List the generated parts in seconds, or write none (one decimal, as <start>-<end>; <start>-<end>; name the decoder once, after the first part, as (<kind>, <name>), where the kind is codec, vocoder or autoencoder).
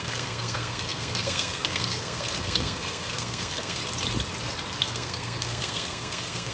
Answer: 0.0-3.8 (codec, SNAC); 4.8-6.5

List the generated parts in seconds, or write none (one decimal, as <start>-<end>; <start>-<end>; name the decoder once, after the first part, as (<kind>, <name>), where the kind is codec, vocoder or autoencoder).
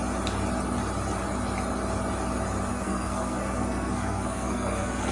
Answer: 2.7-5.1 (codec, SNAC)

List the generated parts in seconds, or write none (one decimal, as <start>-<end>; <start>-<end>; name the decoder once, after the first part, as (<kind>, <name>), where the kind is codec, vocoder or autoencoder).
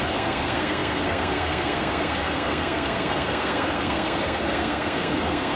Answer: 0.0-5.6 (codec, SNAC)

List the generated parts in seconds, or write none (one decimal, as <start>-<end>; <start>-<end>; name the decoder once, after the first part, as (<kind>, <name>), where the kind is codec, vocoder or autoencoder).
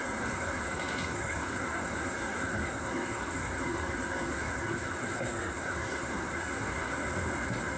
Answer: 0.0-6.9 (codec, SNAC)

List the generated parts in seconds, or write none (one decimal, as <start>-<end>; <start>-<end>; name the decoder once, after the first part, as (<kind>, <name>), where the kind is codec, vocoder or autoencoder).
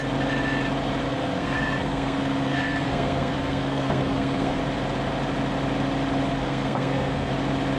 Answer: 1.1-4.6 (codec, SNAC); 6.3-7.3